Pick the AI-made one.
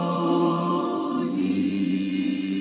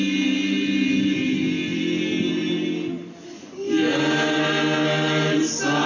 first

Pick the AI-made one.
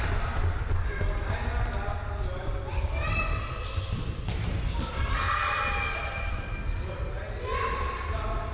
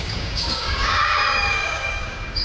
second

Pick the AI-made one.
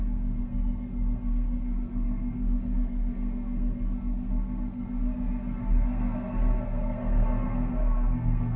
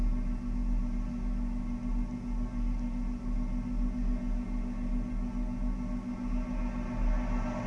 first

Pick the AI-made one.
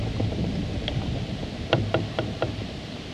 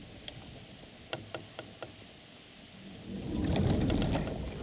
first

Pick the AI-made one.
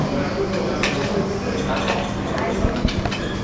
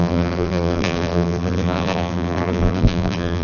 second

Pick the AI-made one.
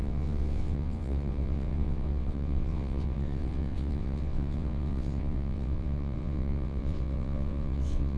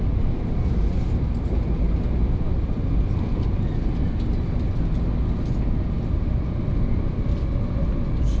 first